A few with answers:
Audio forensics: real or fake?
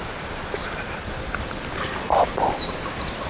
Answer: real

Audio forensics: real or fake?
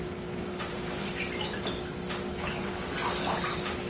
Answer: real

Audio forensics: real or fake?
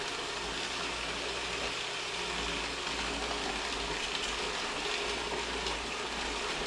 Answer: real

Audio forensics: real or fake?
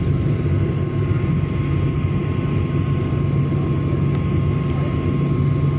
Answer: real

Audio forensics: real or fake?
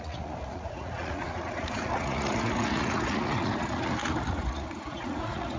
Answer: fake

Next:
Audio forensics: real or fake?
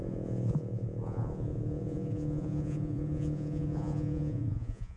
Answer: fake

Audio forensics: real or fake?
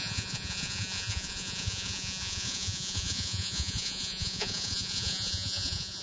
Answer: fake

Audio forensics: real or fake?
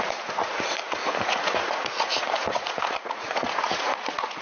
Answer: fake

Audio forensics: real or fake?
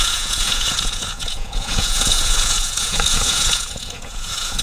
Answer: fake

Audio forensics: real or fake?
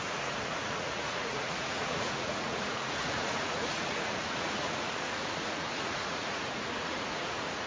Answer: fake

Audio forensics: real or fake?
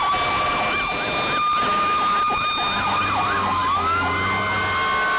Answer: real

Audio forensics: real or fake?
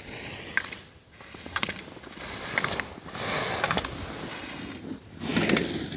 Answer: real